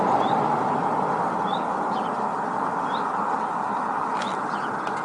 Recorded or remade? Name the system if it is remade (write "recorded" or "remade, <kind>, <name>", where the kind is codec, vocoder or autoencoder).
recorded